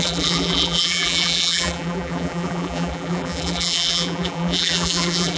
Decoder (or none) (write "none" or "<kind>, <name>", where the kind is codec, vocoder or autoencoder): vocoder, BigVGAN v2